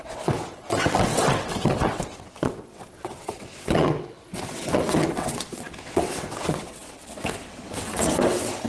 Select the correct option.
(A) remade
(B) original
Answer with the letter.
A